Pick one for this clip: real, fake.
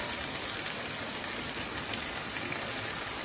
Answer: real